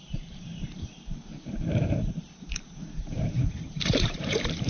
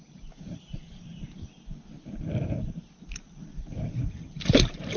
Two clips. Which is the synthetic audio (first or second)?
first